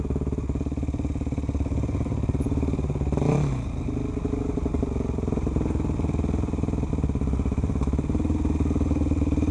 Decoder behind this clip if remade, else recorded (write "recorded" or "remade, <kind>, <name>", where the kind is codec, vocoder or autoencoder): recorded